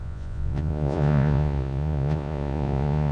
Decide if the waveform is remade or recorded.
remade